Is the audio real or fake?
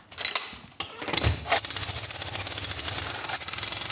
real